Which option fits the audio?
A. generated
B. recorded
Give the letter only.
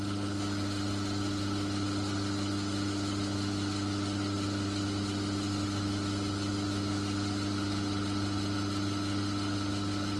B